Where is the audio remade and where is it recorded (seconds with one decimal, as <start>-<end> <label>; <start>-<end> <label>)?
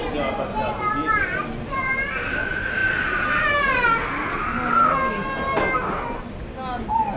0.0-7.2 recorded